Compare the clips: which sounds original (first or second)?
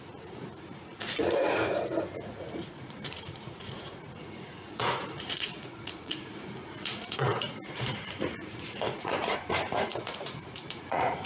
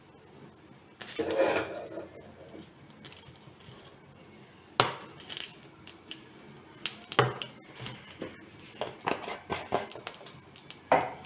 second